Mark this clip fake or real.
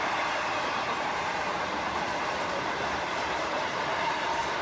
fake